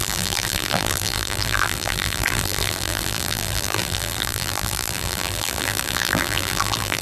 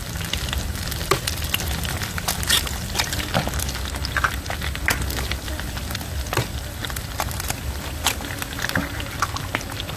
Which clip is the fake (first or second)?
first